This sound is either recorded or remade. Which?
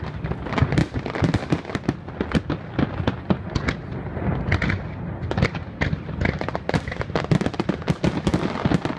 recorded